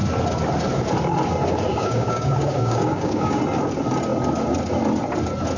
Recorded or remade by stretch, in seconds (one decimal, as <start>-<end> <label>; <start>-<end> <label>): 0.0-1.7 recorded; 1.7-3.4 remade; 3.4-5.6 recorded